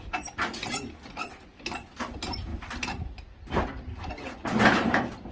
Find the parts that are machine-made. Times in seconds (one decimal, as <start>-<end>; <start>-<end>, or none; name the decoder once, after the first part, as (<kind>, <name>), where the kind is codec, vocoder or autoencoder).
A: none